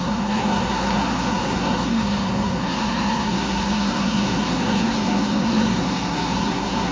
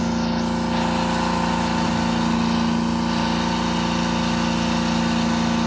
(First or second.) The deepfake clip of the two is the first